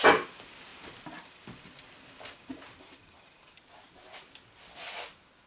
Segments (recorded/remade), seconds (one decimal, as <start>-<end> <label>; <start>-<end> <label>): 0.0-5.5 recorded